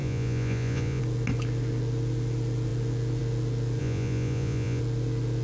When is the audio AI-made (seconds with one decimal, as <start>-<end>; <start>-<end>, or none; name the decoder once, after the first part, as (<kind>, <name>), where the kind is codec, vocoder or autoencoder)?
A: 0.0-1.0 (vocoder, Vocos); 3.8-4.8